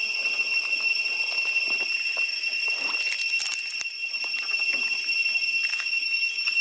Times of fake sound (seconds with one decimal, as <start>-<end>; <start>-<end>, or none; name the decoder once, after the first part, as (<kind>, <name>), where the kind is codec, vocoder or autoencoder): 5.7-6.6 (autoencoder, DAC-VAE)